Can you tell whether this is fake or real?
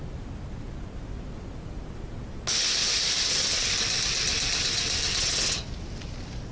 real